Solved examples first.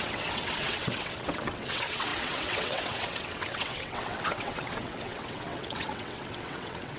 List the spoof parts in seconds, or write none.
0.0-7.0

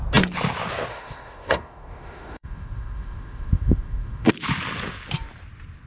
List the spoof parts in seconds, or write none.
0.9-4.3

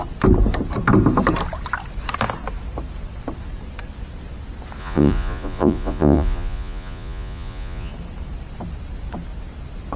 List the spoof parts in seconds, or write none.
4.8-7.9

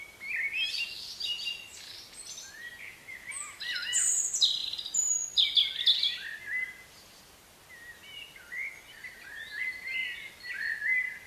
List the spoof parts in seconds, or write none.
none

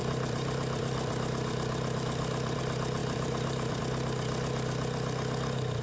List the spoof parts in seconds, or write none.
0.0-2.6; 3.0-3.8

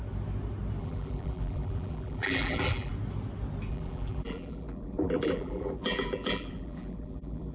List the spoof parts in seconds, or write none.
0.8-2.9; 3.7-7.5